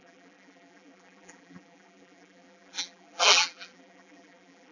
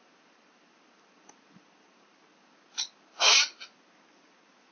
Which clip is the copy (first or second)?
first